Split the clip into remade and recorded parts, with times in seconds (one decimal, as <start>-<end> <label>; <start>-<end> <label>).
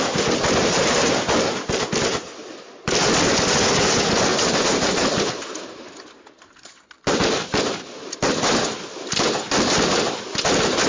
0.0-0.6 recorded; 0.6-1.2 remade; 1.2-4.3 recorded; 4.3-5.3 remade; 5.3-10.9 recorded